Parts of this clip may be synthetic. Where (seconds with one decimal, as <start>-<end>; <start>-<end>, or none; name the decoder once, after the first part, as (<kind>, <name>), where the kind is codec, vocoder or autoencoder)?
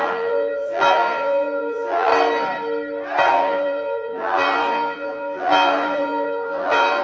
0.0-2.1 (vocoder, BigVGAN v2); 3.3-7.0